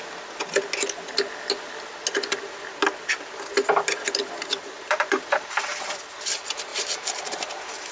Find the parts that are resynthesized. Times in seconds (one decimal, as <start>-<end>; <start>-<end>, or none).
4.7-5.9; 6.7-7.9